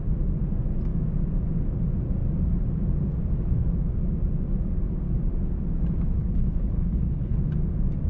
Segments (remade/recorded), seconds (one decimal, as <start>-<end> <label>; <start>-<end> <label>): 0.0-6.2 recorded; 6.2-7.4 remade; 7.4-8.1 recorded